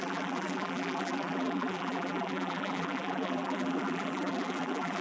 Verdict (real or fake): fake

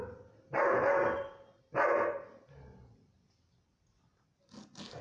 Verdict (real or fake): real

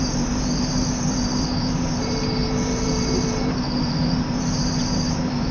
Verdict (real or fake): fake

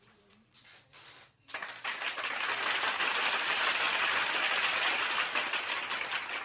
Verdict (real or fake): fake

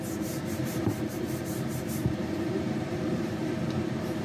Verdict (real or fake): fake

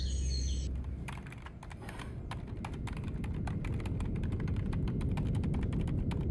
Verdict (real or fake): real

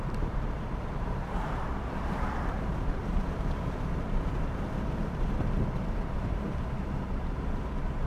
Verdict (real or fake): fake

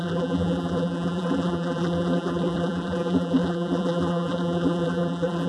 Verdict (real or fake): fake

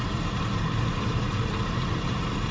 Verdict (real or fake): fake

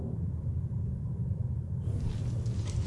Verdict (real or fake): fake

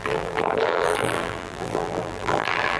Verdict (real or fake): fake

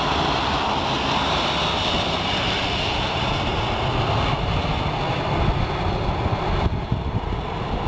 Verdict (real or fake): real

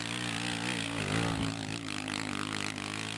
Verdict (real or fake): real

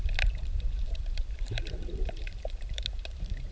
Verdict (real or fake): fake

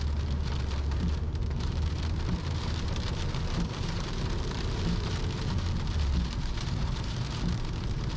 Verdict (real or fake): fake